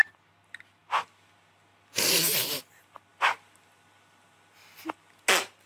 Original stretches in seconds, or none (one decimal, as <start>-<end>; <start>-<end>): 0.0-5.7